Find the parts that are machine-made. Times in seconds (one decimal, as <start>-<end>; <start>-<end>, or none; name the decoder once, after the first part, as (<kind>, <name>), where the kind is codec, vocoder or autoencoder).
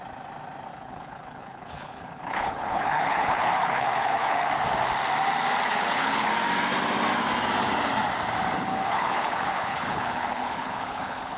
0.7-4.5 (codec, HILCodec); 5.7-6.3; 8.7-11.4